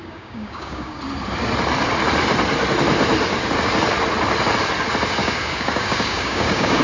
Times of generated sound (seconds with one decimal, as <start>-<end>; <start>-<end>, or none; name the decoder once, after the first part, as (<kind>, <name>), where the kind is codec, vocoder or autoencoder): 0.0-1.0 (codec, DAC); 5.2-6.8